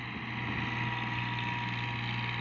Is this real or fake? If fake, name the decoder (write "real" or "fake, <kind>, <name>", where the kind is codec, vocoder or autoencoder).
real